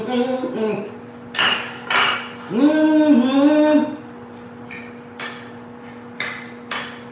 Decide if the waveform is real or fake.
real